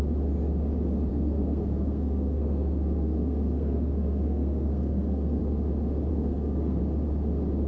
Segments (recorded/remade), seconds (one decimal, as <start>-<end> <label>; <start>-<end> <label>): 0.0-1.1 recorded; 1.1-5.4 remade; 5.4-6.1 recorded; 6.1-6.8 remade; 6.8-7.7 recorded